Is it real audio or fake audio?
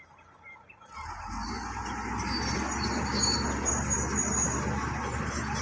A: real